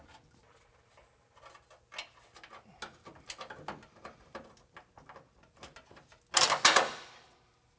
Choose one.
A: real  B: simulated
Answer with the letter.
A